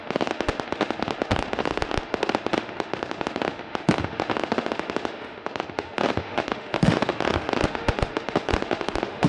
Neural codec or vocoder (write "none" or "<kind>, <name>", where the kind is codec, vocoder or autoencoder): autoencoder, DAC-VAE